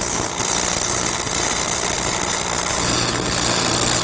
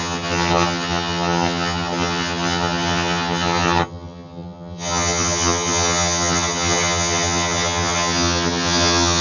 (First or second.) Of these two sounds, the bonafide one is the first